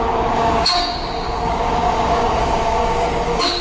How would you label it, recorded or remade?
remade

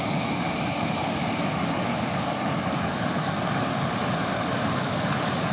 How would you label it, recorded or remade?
remade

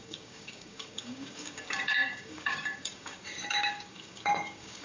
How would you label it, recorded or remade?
remade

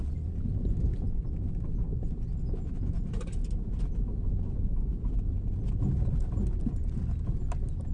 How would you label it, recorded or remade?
recorded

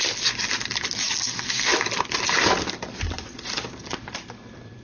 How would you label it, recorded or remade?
recorded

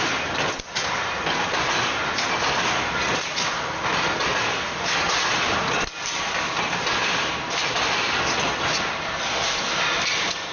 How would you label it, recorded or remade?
recorded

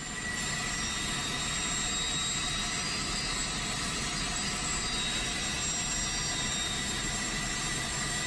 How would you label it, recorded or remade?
recorded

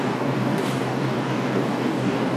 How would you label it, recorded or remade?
remade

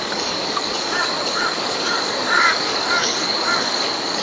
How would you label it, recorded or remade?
remade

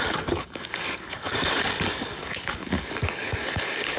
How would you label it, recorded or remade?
remade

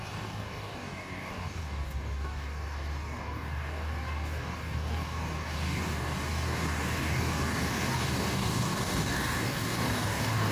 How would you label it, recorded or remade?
remade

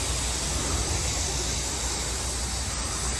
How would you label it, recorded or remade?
recorded